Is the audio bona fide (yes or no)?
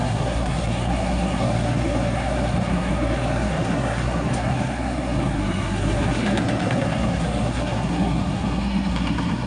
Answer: no